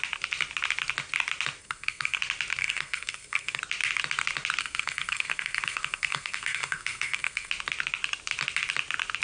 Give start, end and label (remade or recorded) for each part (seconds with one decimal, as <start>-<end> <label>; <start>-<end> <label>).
0.0-1.6 recorded; 1.6-2.2 remade; 2.2-2.6 recorded; 2.6-3.6 remade; 3.6-4.6 recorded; 4.6-7.5 remade; 7.5-9.2 recorded